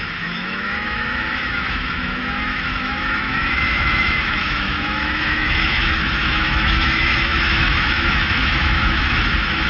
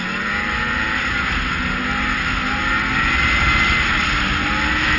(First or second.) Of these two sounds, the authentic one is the second